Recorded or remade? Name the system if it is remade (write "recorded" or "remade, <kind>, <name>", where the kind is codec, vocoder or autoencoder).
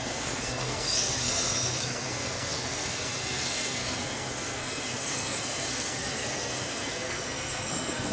remade, codec, SNAC